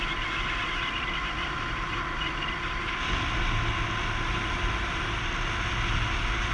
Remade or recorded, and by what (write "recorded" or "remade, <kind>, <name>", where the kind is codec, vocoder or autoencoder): recorded